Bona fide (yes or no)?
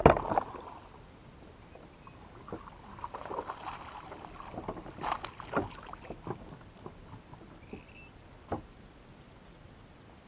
yes